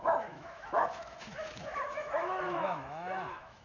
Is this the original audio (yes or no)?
no